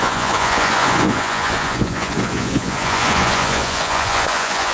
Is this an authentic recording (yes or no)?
no